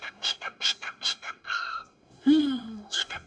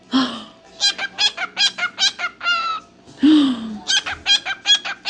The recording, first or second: second